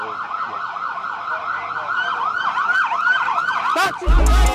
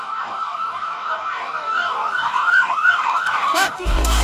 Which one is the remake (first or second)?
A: second